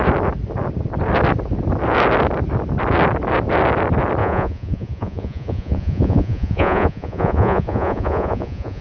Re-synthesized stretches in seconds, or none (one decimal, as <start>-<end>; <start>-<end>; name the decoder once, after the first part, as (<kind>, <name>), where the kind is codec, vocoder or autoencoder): 4.2-8.8 (vocoder, Vocos)